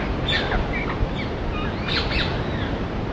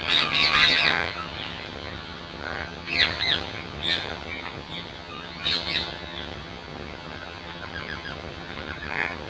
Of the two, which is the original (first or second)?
first